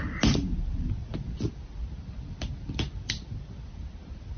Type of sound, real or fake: real